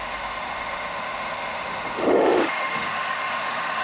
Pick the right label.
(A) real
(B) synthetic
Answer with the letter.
B